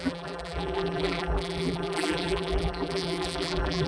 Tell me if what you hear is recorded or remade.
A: remade